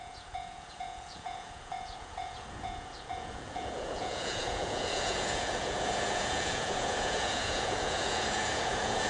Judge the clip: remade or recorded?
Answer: remade